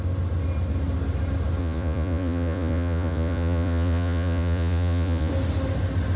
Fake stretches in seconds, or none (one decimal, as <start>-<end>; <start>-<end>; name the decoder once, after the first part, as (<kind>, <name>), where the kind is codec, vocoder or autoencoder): 1.6-5.3 (vocoder, Vocos)

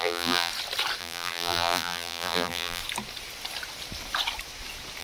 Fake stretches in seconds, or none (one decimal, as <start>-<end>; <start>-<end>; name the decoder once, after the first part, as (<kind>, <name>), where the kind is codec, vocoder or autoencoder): 0.0-0.5 (vocoder, BigVGAN v2); 1.0-2.8

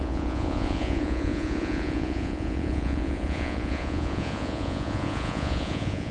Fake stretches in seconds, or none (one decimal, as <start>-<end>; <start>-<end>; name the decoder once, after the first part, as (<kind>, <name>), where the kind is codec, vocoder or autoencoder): 0.0-6.1 (vocoder, Vocos)

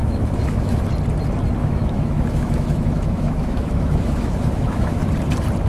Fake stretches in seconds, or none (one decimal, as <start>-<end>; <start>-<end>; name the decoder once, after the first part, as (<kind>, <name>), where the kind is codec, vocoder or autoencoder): 0.0-0.9 (autoencoder, DAC-VAE); 1.6-5.0

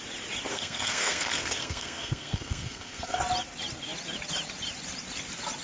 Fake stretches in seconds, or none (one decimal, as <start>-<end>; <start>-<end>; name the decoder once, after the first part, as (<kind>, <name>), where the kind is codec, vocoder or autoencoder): 0.5-3.2 (codec, SNAC)